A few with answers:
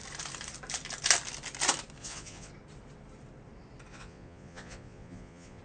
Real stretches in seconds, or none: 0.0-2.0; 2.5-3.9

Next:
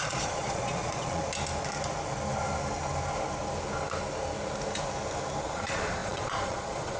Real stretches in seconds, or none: 1.2-5.4

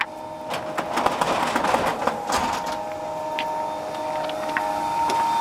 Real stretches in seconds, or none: 0.0-5.4